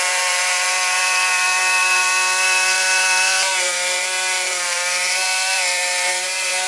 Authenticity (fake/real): fake